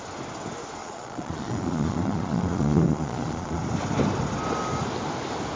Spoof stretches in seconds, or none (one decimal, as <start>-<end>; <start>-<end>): 0.8-3.6